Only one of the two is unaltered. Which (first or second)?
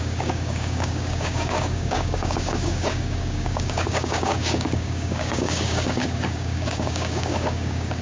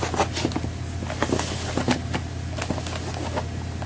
second